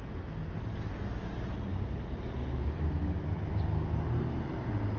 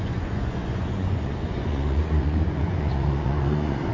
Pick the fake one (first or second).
second